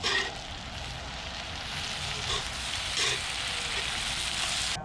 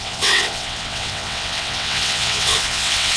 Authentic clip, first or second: first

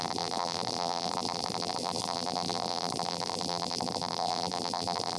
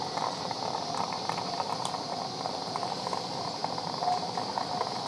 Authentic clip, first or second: second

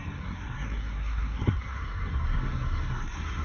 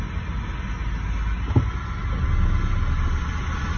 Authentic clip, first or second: second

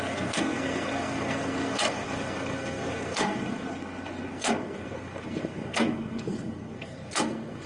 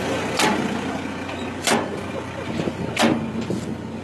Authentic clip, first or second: second